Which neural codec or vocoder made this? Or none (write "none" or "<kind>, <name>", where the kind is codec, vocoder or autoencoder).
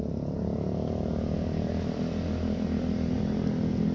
none